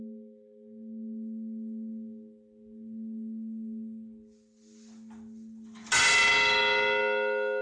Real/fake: real